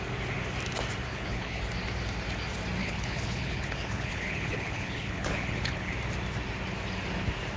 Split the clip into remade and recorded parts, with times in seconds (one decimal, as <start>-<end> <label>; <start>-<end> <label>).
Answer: 0.0-1.1 recorded; 1.1-1.6 remade; 1.6-2.8 recorded; 2.8-5.9 remade; 5.9-7.6 recorded